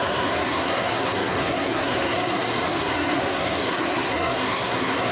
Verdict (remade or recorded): remade